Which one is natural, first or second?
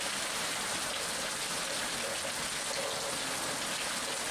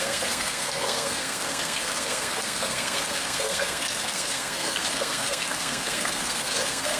first